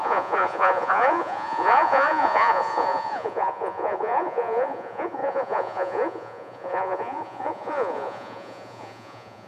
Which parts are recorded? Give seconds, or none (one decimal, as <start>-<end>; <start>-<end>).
none